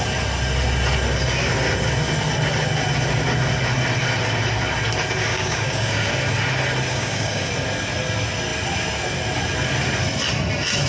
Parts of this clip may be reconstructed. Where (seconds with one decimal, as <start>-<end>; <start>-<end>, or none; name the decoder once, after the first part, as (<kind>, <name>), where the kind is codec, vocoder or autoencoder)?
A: 5.3-6.1 (codec, DAC); 6.9-7.5